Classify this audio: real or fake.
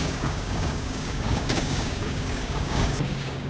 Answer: fake